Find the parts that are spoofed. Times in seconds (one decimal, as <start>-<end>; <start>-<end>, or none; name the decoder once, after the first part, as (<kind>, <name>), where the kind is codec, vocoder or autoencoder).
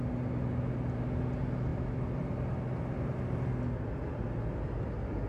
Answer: none